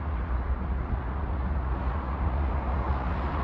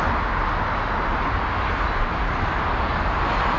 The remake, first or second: first